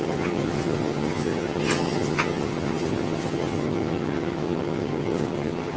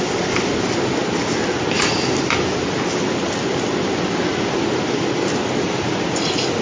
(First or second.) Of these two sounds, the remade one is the first